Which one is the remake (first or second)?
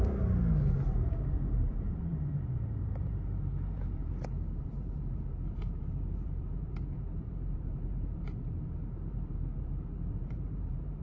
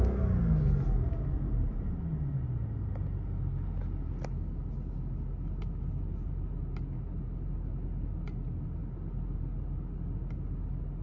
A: first